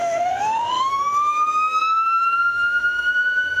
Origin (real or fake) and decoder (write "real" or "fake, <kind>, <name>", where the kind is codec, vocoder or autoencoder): fake, autoencoder, DAC-VAE